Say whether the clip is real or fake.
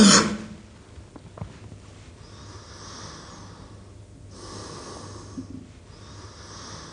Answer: real